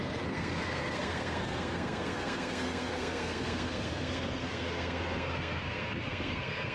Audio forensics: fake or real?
fake